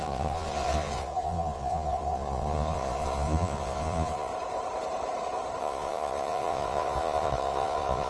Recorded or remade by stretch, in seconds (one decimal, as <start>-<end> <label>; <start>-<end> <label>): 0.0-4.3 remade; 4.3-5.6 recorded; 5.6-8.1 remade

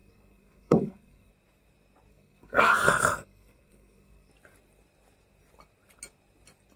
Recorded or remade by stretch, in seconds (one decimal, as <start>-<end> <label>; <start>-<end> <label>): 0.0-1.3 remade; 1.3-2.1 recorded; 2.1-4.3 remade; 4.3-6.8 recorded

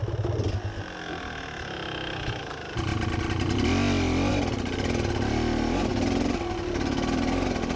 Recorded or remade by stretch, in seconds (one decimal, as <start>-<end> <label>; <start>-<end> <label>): 0.0-7.8 recorded

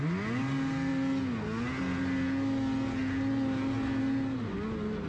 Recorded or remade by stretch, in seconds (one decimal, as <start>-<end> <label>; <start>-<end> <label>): 0.0-5.1 recorded

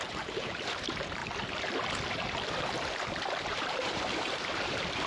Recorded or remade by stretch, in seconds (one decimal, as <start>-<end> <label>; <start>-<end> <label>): 0.0-1.2 remade; 1.2-2.1 recorded; 2.1-5.1 remade

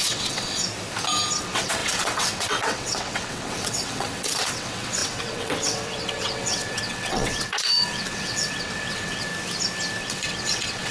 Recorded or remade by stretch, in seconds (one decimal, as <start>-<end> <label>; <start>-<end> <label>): 0.0-0.6 remade; 0.6-1.4 recorded; 1.4-9.3 remade; 9.3-10.0 recorded; 10.0-10.9 remade